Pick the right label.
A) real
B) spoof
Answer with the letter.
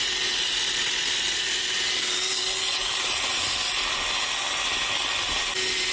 A